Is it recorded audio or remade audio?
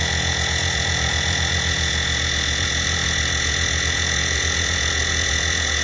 remade